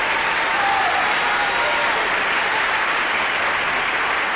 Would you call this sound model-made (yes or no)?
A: no